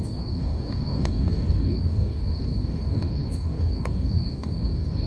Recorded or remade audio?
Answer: remade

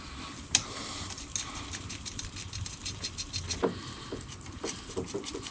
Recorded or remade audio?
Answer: recorded